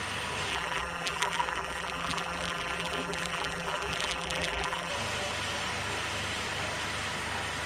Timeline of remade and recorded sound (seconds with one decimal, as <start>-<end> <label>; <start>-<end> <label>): 0.0-0.5 recorded; 0.5-4.9 remade; 4.9-7.7 recorded